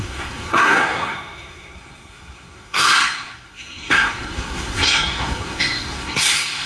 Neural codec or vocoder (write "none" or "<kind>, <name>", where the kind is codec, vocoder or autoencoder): codec, SNAC